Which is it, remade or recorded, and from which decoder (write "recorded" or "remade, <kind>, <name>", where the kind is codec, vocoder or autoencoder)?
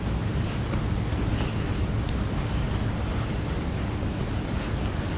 recorded